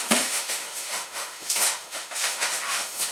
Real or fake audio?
fake